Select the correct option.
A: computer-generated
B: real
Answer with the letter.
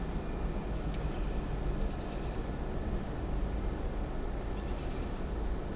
B